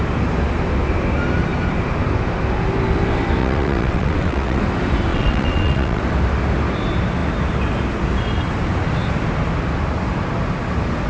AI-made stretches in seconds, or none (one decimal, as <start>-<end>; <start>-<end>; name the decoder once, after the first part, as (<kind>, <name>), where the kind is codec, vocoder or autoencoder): 3.4-4.6 (vocoder, WaveNeXt); 5.1-6.0